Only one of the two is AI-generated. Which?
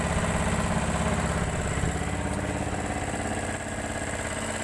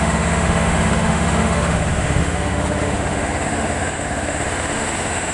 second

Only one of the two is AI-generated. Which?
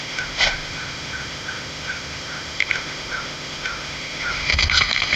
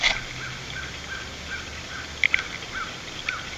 first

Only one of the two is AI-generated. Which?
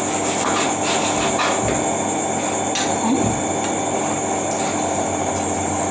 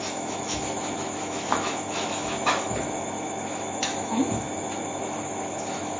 second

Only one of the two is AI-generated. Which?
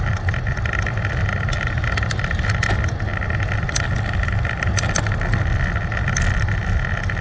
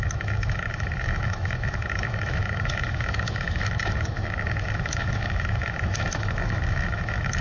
second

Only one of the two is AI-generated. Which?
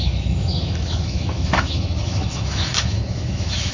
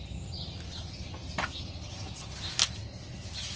first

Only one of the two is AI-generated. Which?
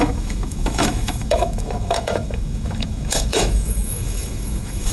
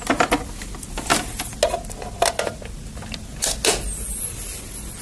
first